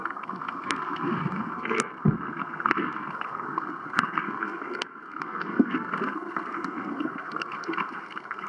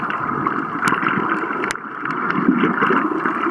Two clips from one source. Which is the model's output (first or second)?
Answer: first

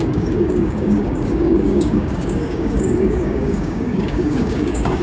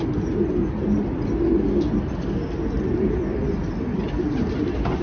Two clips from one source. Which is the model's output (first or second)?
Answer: first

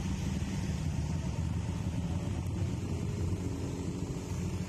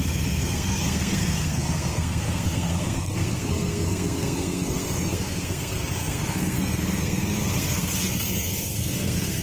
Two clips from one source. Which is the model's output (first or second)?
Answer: second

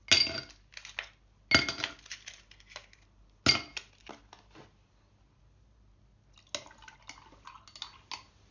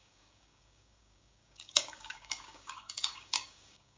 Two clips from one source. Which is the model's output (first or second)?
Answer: second